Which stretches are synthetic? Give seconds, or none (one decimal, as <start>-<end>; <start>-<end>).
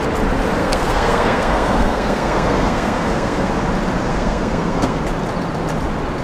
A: 0.6-3.5; 4.1-5.0